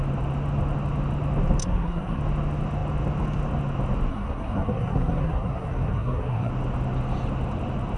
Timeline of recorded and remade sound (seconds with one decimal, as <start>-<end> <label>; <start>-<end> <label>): 0.0-1.6 recorded; 1.6-2.2 remade; 2.2-4.1 recorded; 4.1-6.5 remade; 6.5-8.0 recorded